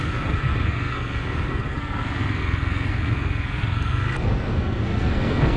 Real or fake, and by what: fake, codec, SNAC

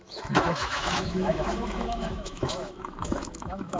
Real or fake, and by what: fake, autoencoder, DAC-VAE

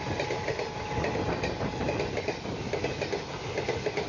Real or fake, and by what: real